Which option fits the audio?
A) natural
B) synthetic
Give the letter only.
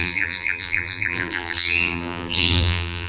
B